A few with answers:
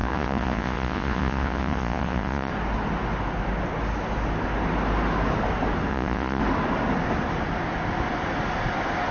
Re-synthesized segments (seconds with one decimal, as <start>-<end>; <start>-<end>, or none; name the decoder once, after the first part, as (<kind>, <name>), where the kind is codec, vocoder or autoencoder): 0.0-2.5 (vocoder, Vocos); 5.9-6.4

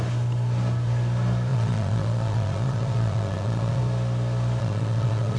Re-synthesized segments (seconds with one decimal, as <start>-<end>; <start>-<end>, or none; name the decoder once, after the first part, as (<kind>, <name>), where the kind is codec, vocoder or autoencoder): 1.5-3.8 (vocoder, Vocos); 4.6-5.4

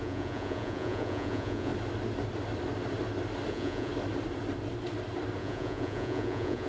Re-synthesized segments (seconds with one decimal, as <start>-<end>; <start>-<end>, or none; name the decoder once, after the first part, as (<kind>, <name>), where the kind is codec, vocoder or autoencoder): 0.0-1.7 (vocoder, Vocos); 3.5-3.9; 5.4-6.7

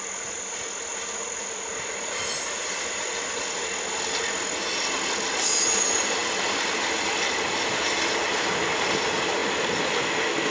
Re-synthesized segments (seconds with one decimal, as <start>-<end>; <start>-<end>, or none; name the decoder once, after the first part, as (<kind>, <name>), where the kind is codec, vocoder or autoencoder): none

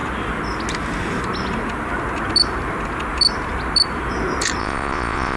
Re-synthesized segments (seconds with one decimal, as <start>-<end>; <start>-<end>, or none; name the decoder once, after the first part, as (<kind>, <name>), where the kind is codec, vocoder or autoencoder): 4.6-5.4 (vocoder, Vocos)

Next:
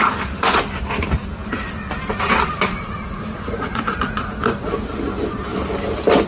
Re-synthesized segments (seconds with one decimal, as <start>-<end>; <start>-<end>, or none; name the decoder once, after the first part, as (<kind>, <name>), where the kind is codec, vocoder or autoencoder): 2.7-4.3 (vocoder, Vocos)